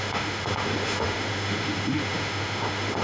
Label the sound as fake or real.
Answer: fake